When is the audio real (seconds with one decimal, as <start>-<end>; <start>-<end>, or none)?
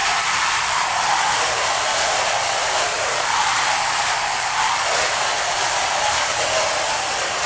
0.9-1.9; 6.4-7.5